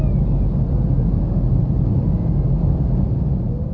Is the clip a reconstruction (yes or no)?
no